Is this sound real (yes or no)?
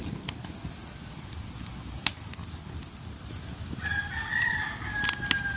yes